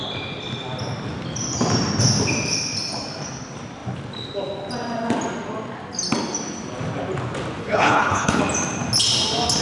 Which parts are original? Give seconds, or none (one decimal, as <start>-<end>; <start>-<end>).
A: 0.0-7.6; 8.4-9.6